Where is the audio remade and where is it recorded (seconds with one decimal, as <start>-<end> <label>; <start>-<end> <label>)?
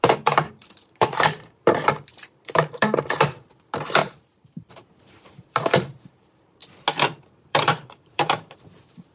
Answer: 0.0-6.6 remade; 6.6-7.3 recorded; 7.3-9.1 remade